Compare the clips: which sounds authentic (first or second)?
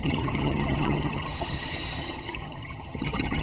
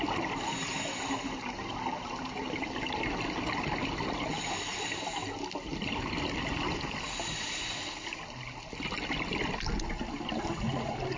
second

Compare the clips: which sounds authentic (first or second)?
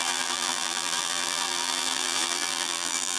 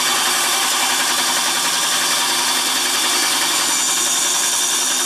second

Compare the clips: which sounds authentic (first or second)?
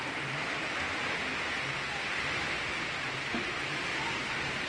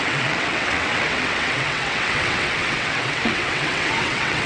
first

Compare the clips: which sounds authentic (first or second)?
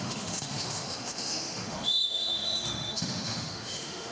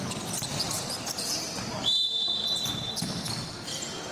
second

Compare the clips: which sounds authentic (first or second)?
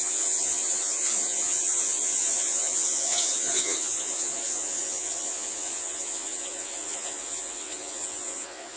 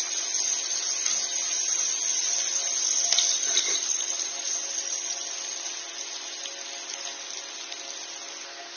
second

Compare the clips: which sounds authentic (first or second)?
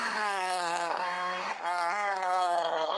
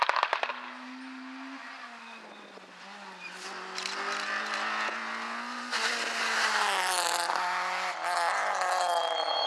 second